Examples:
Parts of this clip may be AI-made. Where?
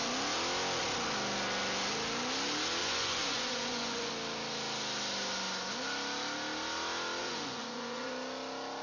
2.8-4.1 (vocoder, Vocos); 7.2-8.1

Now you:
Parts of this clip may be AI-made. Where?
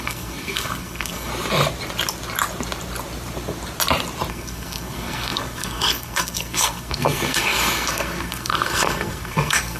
0.0-1.3 (codec, SNAC); 4.3-9.8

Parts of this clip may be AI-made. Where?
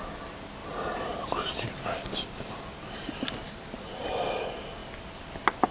0.6-2.6 (vocoder, BigVGAN v2)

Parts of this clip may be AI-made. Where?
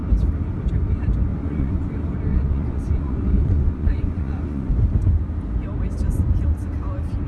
1.3-1.9 (vocoder, Vocos); 2.3-4.7